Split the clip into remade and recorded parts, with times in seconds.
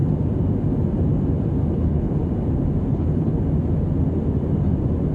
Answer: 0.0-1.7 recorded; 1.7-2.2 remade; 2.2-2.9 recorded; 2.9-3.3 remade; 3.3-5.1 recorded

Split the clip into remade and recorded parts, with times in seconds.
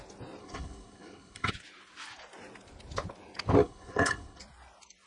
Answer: 0.0-0.4 recorded; 0.4-1.5 remade; 1.5-3.6 recorded; 3.6-4.4 remade; 4.4-5.1 recorded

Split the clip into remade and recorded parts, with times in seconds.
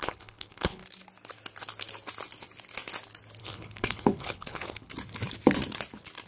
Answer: 0.0-0.8 remade; 0.8-3.4 recorded; 3.4-4.9 remade; 4.9-6.3 recorded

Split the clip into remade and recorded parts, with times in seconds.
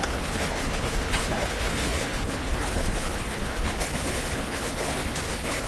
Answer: 0.0-5.7 remade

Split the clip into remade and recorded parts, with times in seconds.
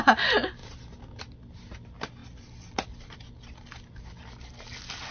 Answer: 0.0-5.1 recorded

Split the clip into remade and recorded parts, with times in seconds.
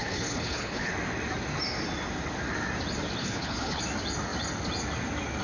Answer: 0.0-0.9 remade; 0.9-3.2 recorded; 3.2-3.8 remade; 3.8-5.4 recorded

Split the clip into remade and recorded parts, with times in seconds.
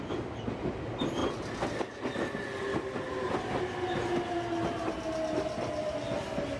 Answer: 0.0-6.6 recorded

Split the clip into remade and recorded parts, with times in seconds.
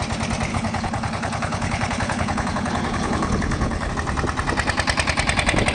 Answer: 0.0-0.5 recorded; 0.5-3.9 remade; 3.9-5.7 recorded